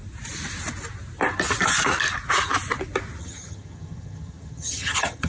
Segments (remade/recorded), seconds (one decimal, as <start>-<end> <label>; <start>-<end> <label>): 0.0-3.2 recorded; 3.2-5.3 remade